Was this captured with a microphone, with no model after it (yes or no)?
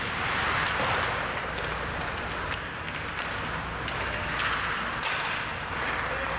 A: yes